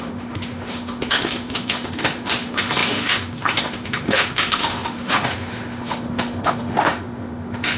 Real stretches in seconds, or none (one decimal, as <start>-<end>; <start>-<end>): none